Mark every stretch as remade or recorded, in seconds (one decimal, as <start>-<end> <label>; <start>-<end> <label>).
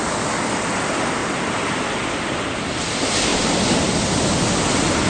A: 0.0-1.2 recorded; 1.2-1.8 remade; 1.8-3.3 recorded; 3.3-3.9 remade; 3.9-5.1 recorded